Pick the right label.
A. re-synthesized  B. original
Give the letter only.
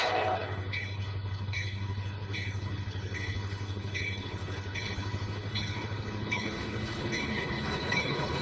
A